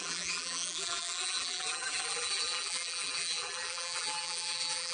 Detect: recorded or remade remade